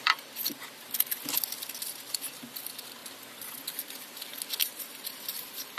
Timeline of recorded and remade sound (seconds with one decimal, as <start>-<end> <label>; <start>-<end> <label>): 0.0-0.5 remade; 0.5-2.1 recorded; 2.1-3.0 remade; 3.0-5.2 recorded; 5.2-5.8 remade